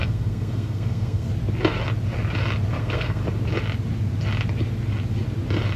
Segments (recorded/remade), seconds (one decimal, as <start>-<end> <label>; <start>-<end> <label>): 0.0-1.3 remade; 1.3-2.8 recorded; 2.8-3.2 remade; 3.2-5.8 recorded